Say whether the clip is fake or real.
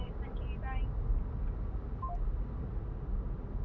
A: real